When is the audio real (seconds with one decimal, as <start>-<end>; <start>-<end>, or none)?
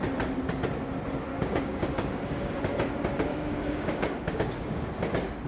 0.0-1.3; 2.6-3.3; 4.8-5.5